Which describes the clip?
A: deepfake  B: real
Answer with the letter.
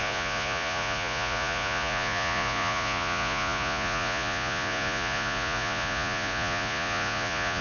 A